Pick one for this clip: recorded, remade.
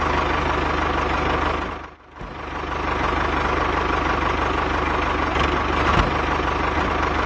recorded